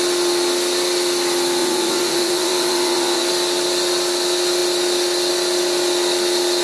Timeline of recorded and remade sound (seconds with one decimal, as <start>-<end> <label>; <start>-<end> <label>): 0.0-1.6 recorded; 1.6-3.3 remade; 3.3-6.6 recorded